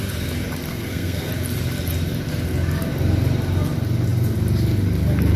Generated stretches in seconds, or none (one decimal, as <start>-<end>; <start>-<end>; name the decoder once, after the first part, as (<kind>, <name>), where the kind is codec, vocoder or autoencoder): 0.7-1.3 (codec, SNAC)